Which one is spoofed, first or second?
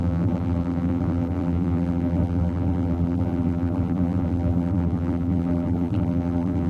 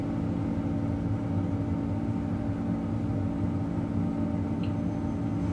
first